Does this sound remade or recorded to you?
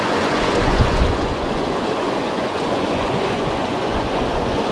remade